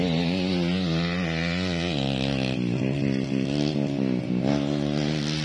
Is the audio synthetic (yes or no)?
no